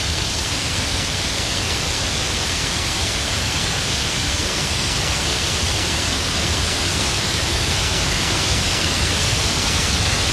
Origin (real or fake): fake